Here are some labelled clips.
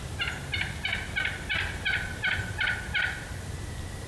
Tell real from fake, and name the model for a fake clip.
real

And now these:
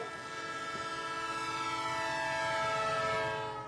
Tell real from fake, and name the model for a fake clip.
real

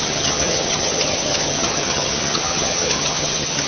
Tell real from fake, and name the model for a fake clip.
fake, vocoder, HiFi-GAN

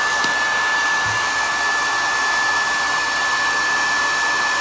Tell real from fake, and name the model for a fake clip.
real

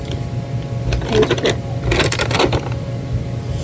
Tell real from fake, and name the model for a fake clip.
real